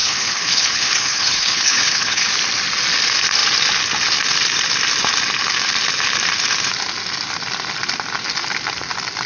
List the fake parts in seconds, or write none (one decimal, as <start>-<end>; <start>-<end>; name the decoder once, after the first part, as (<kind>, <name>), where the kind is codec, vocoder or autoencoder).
0.0-2.3 (codec, HILCodec)